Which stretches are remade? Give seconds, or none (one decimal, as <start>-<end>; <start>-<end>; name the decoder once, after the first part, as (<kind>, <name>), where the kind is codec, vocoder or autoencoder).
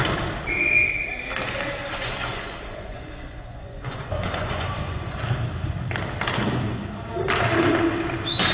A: 1.8-5.2 (vocoder, Vocos)